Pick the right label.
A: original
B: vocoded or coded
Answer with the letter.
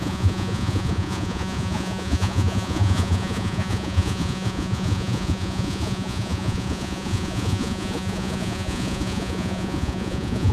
B